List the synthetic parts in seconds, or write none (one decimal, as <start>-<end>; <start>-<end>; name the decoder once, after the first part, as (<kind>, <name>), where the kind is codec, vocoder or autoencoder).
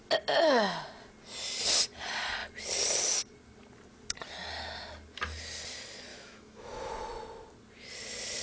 6.1-6.9 (autoencoder, DAC-VAE)